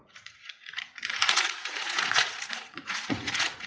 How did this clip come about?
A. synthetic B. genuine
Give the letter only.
A